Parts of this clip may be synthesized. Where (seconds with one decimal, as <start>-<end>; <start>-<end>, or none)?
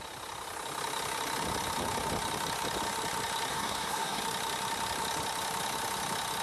3.5-4.2